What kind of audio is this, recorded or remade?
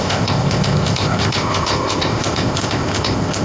remade